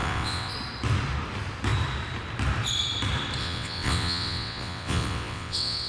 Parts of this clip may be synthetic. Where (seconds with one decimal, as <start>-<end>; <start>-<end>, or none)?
0.0-0.5; 3.4-5.9